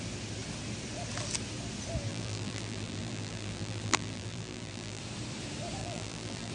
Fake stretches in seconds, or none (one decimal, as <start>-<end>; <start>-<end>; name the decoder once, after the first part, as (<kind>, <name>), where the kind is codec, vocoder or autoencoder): 2.1-5.0 (vocoder, BigVGAN v2); 5.8-6.5